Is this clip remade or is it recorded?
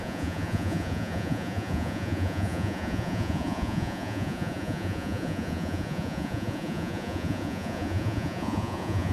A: remade